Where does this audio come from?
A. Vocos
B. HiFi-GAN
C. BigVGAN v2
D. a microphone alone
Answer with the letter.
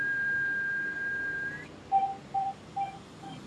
D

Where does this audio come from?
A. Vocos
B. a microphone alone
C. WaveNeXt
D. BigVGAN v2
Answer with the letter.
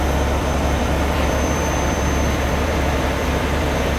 D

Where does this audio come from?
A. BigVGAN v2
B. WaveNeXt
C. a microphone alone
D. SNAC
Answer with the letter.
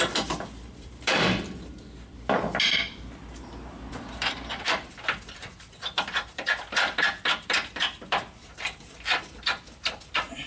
A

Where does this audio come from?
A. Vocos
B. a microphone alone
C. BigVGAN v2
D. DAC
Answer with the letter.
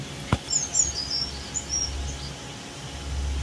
B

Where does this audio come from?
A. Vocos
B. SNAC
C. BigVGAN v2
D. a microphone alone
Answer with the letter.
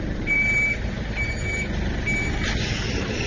C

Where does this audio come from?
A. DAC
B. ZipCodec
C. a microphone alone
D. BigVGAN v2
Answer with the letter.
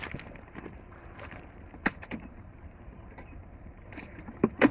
D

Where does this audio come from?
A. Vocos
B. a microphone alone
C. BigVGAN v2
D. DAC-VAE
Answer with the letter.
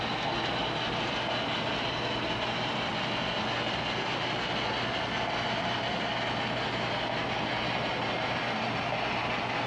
B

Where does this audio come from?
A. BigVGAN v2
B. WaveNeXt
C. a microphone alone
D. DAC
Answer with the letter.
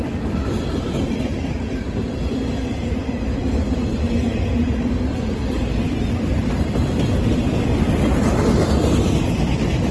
A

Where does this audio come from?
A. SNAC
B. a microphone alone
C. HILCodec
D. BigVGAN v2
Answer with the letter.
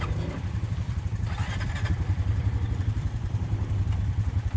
D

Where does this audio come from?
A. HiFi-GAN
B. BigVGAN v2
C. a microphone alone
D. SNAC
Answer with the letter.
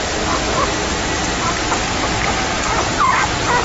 B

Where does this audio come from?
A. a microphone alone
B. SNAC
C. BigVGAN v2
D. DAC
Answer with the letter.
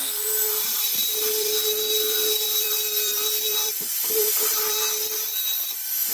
C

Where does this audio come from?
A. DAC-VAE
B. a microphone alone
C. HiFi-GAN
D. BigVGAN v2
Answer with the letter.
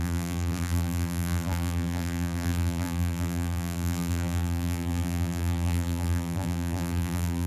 D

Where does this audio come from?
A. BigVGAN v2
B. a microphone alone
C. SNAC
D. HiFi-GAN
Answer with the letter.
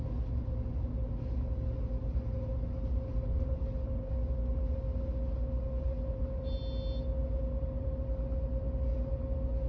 B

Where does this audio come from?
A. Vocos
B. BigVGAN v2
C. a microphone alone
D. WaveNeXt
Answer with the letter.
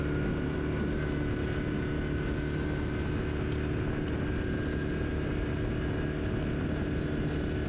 C